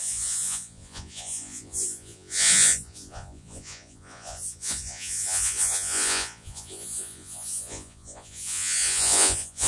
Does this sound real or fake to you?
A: fake